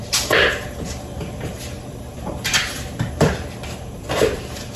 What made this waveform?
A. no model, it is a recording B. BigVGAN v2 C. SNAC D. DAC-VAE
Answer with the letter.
B